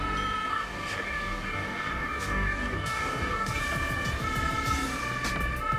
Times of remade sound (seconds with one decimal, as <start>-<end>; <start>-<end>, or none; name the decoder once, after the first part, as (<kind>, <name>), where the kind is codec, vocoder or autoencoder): 0.5-3.6 (codec, DAC)